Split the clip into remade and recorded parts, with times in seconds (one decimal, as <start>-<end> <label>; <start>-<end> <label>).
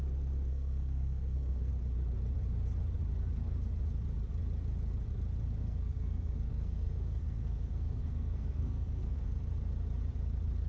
0.0-0.5 recorded; 0.5-1.7 remade; 1.7-5.6 recorded; 5.6-9.4 remade; 9.4-10.7 recorded